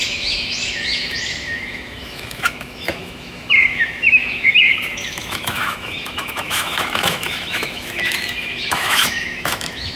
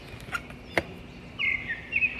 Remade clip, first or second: first